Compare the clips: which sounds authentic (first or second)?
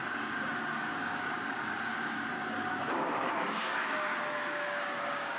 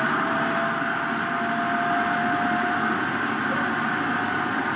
second